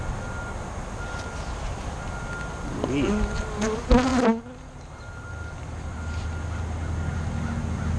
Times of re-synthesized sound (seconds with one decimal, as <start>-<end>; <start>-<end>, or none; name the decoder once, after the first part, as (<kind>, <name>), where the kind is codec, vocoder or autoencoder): none